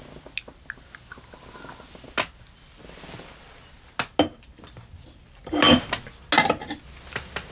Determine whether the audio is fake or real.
real